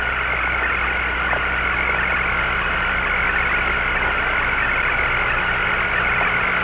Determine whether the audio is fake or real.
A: real